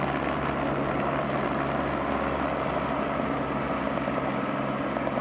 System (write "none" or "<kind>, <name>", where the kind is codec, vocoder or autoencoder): none